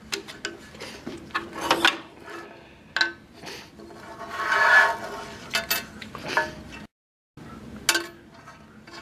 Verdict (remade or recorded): recorded